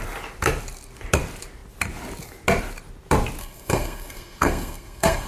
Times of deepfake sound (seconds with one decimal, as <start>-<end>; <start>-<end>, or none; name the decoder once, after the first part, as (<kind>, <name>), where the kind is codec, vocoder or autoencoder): 3.4-5.3 (codec, SNAC)